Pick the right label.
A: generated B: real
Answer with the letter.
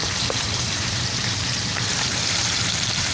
A